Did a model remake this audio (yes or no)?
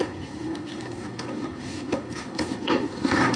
yes